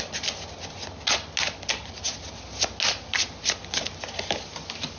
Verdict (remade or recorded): recorded